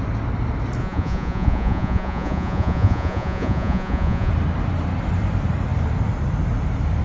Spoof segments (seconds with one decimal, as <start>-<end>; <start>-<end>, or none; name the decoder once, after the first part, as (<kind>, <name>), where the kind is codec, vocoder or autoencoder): 0.8-4.3 (vocoder, Vocos)